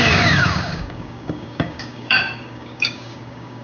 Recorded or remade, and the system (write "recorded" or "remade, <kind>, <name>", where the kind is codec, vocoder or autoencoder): remade, codec, DAC